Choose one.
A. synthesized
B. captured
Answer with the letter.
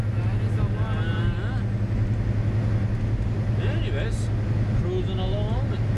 B